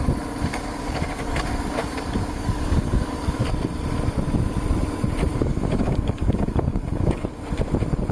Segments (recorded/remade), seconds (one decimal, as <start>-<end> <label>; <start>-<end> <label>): 0.0-0.5 recorded; 0.5-3.5 remade; 3.5-5.3 recorded; 5.3-7.4 remade; 7.4-8.1 recorded